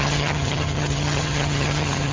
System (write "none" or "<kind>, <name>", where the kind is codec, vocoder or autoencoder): vocoder, HiFi-GAN